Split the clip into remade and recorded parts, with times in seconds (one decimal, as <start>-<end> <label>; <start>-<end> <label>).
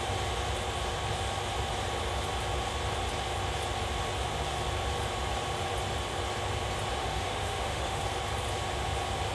0.0-7.0 recorded; 7.0-8.0 remade; 8.0-9.3 recorded